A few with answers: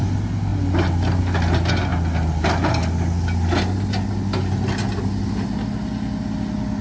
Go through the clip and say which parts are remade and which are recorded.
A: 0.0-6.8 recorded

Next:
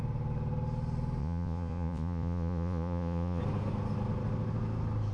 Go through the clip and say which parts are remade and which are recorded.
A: 0.0-1.2 recorded; 1.2-3.4 remade; 3.4-5.1 recorded